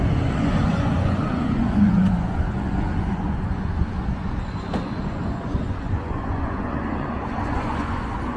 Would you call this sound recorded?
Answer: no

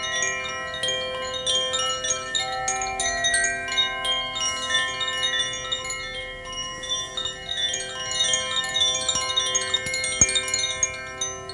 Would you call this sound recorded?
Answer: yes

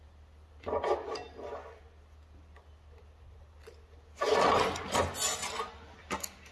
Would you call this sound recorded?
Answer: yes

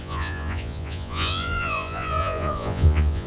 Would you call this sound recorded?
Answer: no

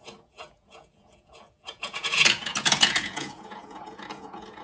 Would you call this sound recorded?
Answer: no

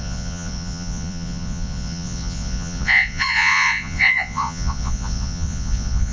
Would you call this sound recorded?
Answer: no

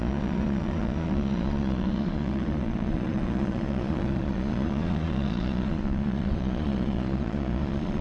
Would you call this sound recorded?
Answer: no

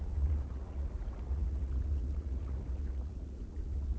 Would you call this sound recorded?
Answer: no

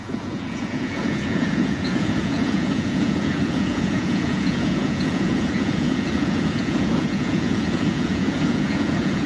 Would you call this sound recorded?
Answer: no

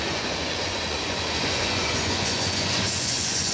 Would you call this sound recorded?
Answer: no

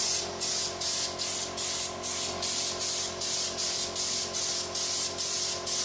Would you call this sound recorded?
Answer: yes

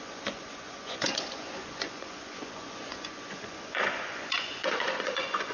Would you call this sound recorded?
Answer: no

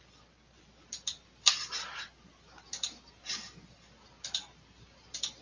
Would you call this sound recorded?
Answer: yes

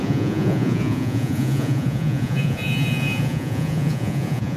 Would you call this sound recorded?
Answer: no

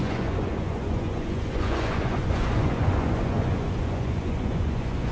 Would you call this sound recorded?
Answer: no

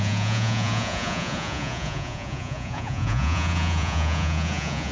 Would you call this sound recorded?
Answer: no